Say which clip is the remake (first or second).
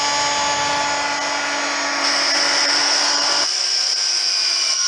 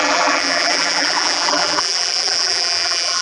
second